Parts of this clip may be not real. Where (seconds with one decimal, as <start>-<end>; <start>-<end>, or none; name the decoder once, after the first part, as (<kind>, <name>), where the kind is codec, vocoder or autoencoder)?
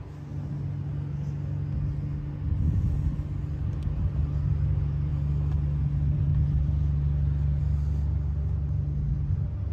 none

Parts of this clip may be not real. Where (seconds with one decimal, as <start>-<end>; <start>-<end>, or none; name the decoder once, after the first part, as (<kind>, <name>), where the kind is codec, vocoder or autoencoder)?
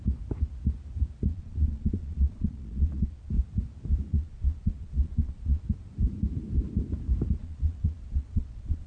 1.3-3.3 (vocoder, Vocos); 4.1-5.6; 7.4-8.9